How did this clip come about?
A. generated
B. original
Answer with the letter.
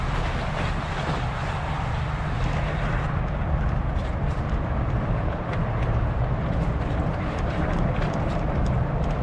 A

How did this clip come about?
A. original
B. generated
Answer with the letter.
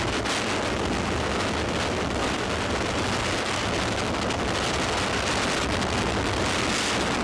A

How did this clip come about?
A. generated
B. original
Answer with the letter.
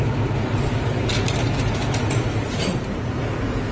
B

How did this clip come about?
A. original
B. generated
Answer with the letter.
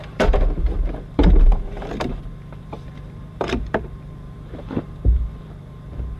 B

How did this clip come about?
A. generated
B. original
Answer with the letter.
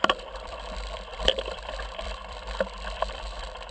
A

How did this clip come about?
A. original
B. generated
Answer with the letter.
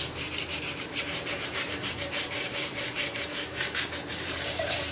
B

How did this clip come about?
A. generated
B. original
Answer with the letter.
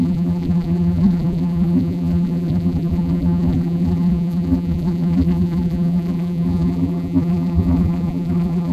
A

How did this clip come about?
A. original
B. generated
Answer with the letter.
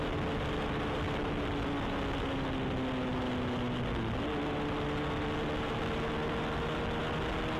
A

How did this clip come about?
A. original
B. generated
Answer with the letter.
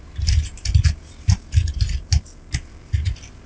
B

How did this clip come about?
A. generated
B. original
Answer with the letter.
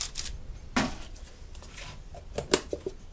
A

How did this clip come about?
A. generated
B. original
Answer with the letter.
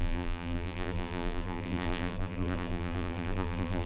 A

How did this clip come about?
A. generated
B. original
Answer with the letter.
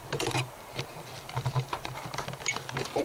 A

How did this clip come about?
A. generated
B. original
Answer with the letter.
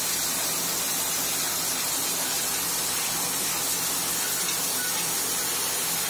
B